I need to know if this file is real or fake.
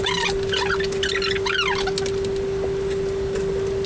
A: real